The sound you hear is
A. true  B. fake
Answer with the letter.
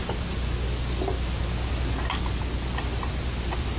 A